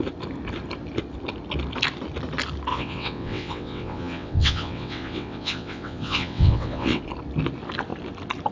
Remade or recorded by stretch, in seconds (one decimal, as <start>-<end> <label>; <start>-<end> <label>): 0.0-2.7 recorded; 2.7-7.0 remade; 7.0-8.5 recorded